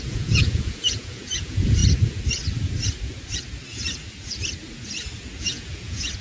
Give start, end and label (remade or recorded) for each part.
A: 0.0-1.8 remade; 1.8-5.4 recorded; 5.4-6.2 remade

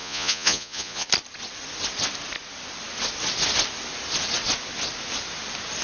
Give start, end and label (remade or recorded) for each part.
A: 0.0-1.1 remade; 1.1-5.8 recorded

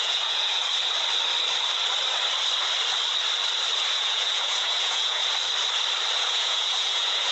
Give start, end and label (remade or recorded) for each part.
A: 0.0-0.6 remade; 0.6-3.9 recorded; 3.9-5.2 remade; 5.2-6.2 recorded; 6.2-7.3 remade

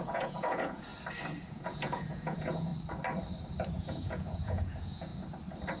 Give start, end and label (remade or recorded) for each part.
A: 0.0-0.9 remade; 0.9-1.5 recorded; 1.5-2.7 remade; 2.7-3.7 recorded; 3.7-5.1 remade; 5.1-5.8 recorded